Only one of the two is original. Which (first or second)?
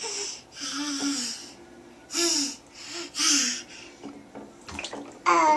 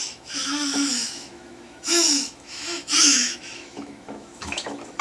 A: first